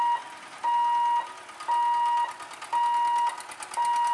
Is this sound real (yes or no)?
yes